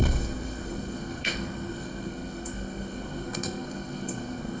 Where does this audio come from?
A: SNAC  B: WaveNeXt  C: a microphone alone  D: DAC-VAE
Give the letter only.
A